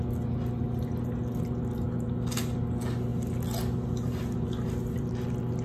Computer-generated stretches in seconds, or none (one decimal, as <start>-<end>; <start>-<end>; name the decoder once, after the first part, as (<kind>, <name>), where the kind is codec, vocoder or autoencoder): none